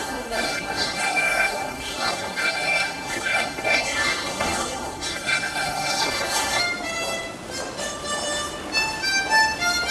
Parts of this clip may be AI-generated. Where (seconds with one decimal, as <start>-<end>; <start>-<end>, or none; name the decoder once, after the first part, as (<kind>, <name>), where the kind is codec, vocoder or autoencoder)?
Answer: 0.0-6.6 (codec, SNAC)